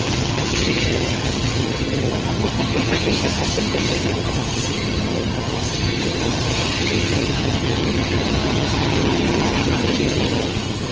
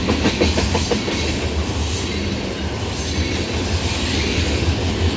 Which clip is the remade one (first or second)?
first